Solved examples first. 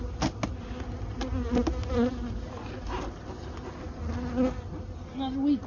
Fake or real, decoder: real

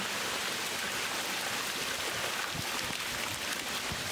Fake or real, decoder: real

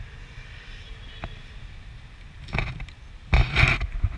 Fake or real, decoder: fake, vocoder, BigVGAN v2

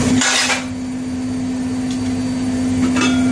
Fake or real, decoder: real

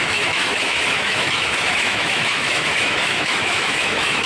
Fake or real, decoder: fake, autoencoder, DAC-VAE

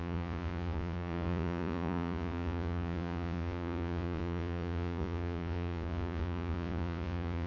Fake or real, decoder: fake, vocoder, Vocos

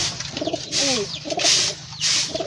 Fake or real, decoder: fake, vocoder, BigVGAN v2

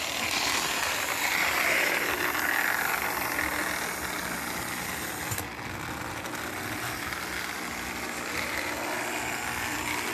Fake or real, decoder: real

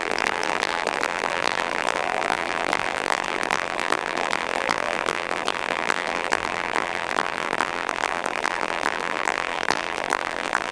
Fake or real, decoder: fake, vocoder, BigVGAN v2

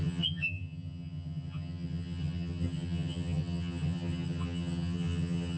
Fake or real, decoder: fake, vocoder, HiFi-GAN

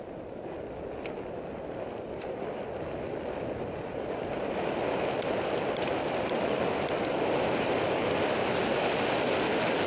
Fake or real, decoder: real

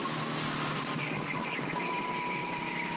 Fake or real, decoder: real